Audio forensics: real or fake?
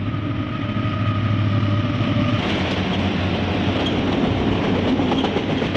real